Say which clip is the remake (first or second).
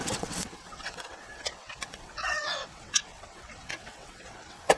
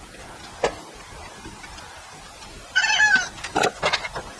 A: first